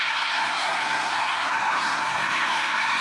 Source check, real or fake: fake